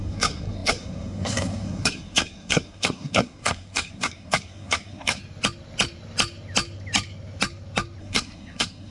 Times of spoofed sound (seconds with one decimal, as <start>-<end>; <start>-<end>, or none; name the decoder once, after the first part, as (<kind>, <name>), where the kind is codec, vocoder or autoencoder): 0.0-5.2 (codec, SNAC); 8.0-8.9